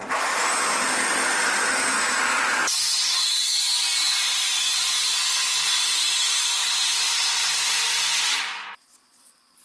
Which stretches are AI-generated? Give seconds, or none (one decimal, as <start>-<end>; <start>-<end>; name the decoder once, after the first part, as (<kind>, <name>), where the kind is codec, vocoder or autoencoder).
none